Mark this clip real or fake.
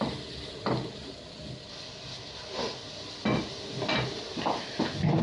real